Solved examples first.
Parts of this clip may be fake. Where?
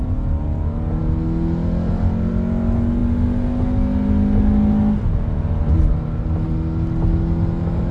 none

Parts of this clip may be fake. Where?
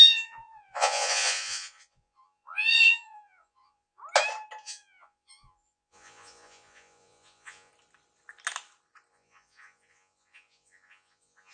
0.0-4.0 (vocoder, Vocos); 4.6-7.7; 9.1-11.5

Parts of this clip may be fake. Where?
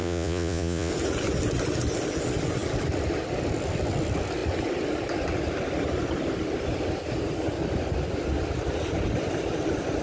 0.0-0.9 (vocoder, Vocos)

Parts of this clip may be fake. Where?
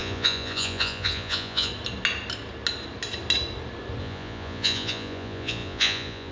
0.0-1.7 (vocoder, Vocos); 4.0-6.3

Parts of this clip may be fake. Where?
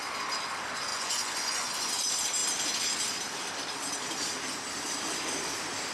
0.9-1.9 (vocoder, Vocos)